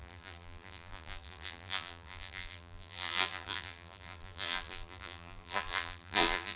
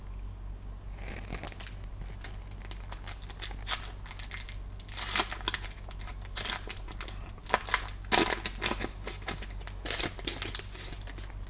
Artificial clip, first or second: first